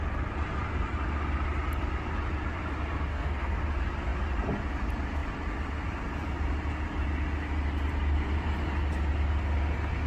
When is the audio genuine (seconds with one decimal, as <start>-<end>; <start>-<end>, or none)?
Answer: 0.0-3.1; 3.6-10.1

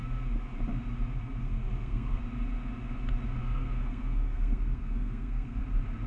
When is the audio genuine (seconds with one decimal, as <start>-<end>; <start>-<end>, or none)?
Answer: 0.0-1.4; 2.2-3.4; 5.6-6.1

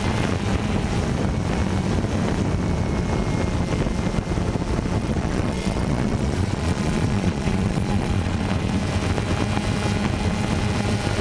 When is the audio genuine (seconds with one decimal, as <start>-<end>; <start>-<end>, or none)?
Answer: 0.0-5.0; 8.4-11.2

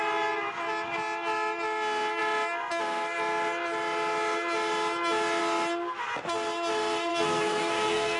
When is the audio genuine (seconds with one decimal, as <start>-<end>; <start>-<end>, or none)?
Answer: 0.0-7.1

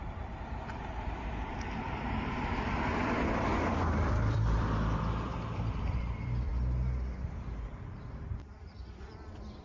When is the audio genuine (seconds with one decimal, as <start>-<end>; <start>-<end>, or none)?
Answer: 6.5-7.7

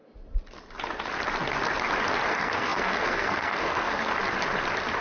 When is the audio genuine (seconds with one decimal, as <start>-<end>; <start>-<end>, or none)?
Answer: 0.0-2.3; 4.1-5.0

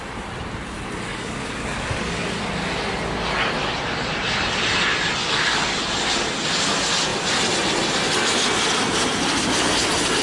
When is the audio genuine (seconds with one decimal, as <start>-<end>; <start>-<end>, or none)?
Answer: 0.0-1.1; 2.4-5.2; 5.8-10.2